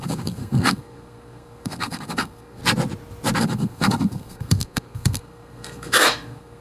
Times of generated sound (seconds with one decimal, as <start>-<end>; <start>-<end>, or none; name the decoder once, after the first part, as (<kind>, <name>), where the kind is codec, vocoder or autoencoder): 0.0-2.6 (codec, SNAC); 3.4-6.6